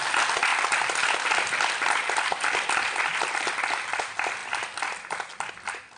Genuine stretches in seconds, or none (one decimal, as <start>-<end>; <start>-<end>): 0.0-6.0